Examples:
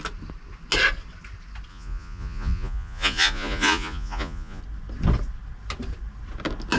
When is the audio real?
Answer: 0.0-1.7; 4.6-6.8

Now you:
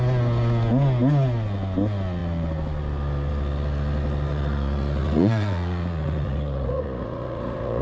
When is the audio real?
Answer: 0.0-4.3

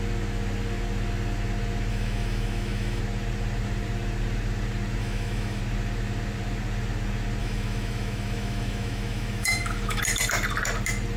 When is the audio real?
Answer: 0.0-1.9; 3.0-5.0; 5.6-7.4; 10.0-11.2

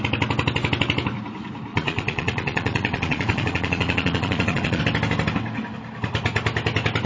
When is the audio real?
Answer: 0.0-1.7; 4.8-7.1